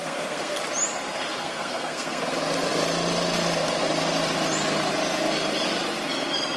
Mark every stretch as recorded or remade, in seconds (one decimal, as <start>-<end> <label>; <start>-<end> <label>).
0.0-0.6 remade; 0.6-1.4 recorded; 1.4-2.2 remade; 2.2-6.6 recorded